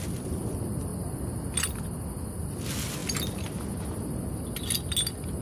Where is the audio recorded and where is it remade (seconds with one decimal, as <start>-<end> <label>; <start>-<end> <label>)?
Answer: 0.0-5.4 recorded